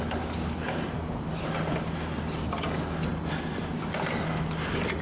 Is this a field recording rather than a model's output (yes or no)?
yes